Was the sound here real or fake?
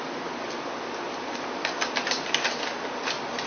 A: real